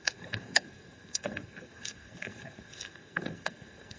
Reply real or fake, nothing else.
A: fake